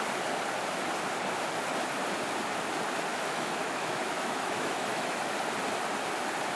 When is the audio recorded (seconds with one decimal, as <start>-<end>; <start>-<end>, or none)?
0.0-3.1; 5.2-6.6